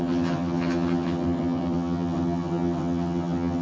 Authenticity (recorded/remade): remade